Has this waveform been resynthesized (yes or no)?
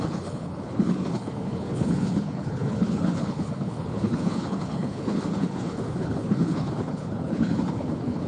yes